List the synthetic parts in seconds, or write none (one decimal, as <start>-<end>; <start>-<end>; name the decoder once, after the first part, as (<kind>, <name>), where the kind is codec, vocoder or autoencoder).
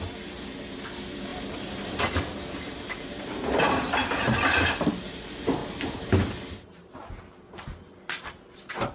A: 5.6-6.1 (vocoder, BigVGAN v2)